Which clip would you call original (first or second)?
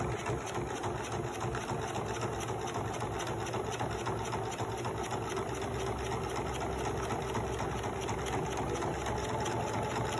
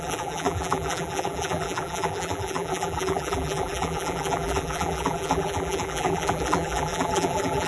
first